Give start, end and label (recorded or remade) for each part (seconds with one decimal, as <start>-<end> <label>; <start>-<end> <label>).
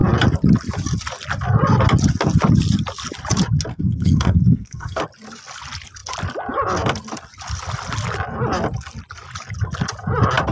0.0-3.7 recorded; 3.7-5.0 remade; 5.0-10.5 recorded